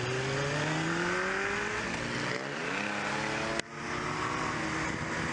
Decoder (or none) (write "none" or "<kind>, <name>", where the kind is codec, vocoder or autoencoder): none